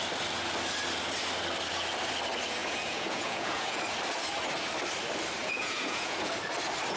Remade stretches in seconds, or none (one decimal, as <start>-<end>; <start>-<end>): 2.6-3.8; 5.4-6.3